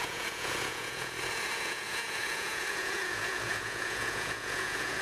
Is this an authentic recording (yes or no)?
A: no